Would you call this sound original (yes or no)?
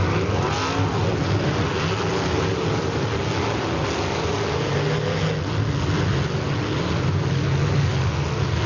yes